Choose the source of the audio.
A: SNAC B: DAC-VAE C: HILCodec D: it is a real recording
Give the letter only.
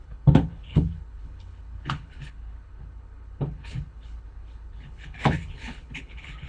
C